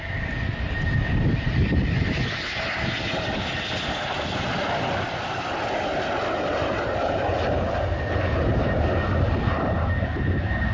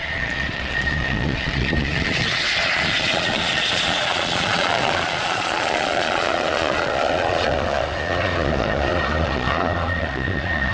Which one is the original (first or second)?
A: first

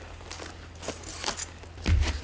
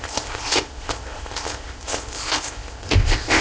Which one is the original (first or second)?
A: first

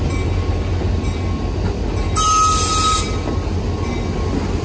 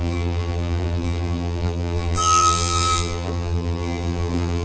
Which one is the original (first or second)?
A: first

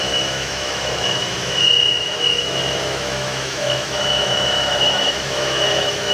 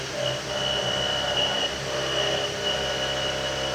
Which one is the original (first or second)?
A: second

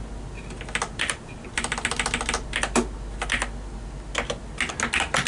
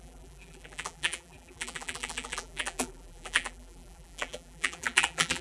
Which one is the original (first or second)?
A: first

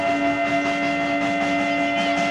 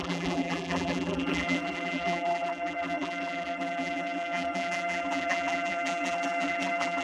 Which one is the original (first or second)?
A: first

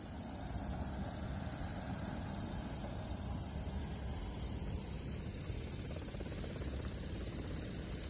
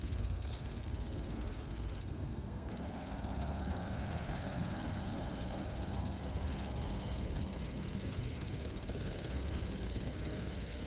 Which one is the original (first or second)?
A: first